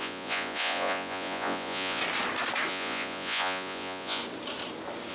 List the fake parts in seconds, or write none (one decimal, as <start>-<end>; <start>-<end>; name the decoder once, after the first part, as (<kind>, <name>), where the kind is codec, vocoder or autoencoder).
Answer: 0.0-2.0 (vocoder, Vocos); 2.7-4.2